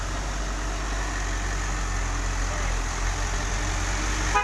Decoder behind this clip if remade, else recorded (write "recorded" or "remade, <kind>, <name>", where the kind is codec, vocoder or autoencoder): recorded